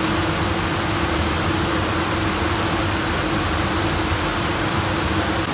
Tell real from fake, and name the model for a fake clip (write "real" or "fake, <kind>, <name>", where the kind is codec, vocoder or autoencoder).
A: real